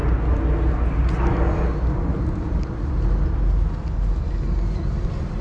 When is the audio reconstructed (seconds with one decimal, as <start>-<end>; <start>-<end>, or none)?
none